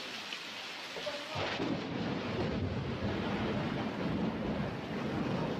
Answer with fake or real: real